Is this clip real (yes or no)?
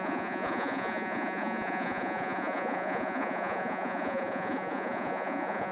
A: no